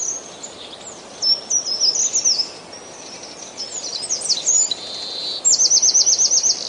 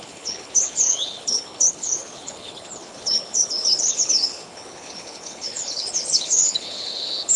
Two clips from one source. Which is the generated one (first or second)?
second